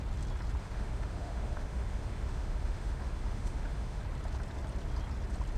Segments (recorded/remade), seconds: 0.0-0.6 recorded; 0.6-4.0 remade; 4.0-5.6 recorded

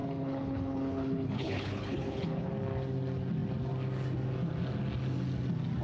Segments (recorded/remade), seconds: 0.0-2.5 remade; 2.5-5.8 recorded

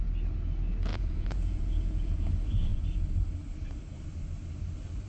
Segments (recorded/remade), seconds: 0.0-0.9 recorded; 0.9-2.3 remade; 2.3-5.1 recorded

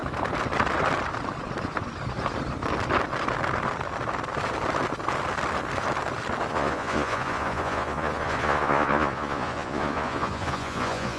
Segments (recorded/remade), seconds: 0.0-6.5 recorded; 6.5-11.2 remade

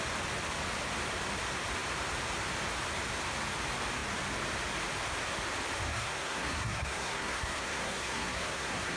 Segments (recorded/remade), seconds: 0.0-5.9 recorded; 5.9-9.0 remade